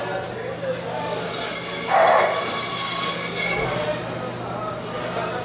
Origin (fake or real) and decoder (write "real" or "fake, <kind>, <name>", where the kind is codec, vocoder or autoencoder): real